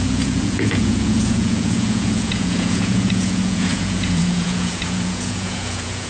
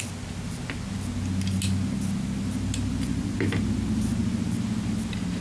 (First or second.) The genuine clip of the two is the second